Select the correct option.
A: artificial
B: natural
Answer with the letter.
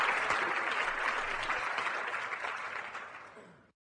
B